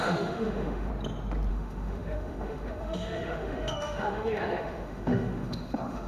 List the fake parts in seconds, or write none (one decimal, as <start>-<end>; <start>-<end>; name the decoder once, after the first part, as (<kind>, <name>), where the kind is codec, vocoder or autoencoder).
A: 0.0-0.9 (autoencoder, DAC-VAE); 1.5-6.1